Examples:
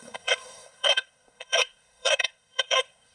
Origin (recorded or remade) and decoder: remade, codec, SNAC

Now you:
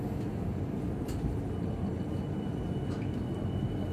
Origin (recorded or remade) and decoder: recorded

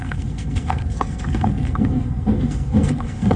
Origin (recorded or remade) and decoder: remade, codec, SNAC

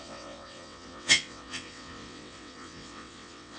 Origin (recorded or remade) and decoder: remade, vocoder, WaveNeXt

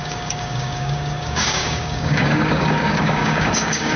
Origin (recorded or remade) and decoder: remade, codec, DAC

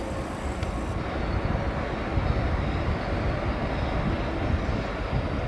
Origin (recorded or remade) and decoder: recorded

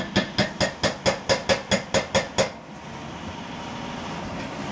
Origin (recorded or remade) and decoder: recorded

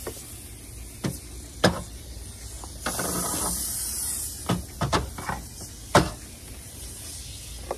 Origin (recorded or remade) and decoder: recorded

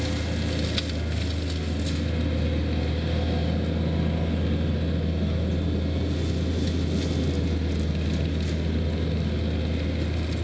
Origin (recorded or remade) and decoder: recorded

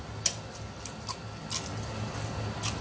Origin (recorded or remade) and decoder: recorded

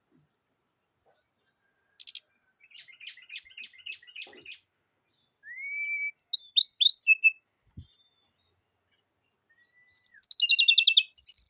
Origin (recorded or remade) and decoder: recorded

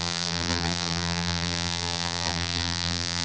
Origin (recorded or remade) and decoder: remade, vocoder, BigVGAN v2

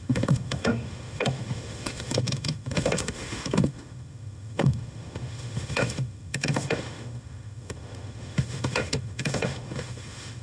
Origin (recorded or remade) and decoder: remade, autoencoder, DAC-VAE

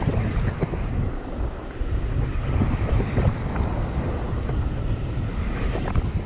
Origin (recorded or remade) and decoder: recorded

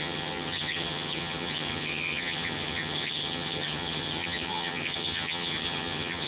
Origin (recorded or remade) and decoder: remade, vocoder, HiFi-GAN